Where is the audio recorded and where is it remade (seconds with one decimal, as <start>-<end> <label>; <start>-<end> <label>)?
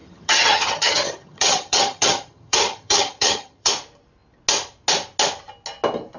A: 0.0-3.7 remade; 3.7-6.2 recorded